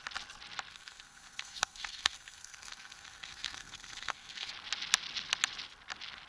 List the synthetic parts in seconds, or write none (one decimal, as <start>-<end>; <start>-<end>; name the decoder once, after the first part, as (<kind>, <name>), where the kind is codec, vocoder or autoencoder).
0.7-4.5 (codec, SNAC)

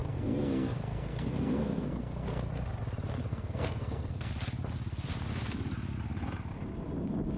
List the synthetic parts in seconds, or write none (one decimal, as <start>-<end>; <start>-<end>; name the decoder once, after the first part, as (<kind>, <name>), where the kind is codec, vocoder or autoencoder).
0.0-2.5 (codec, SNAC); 3.3-4.3

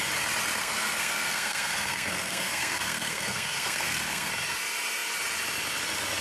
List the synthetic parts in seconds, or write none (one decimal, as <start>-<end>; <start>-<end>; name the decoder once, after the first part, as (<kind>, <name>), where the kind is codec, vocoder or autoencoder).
0.6-4.3 (codec, SNAC)

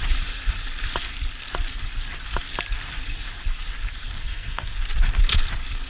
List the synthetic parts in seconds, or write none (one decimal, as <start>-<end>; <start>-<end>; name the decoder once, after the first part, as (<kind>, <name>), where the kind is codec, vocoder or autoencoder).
4.2-4.7 (codec, SNAC)